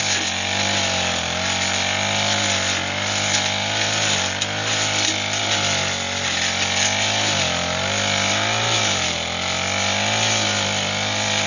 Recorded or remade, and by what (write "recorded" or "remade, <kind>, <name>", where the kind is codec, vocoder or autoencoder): recorded